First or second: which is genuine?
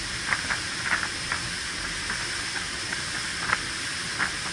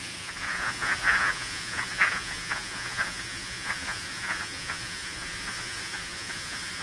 first